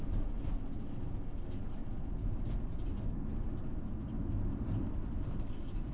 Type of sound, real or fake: real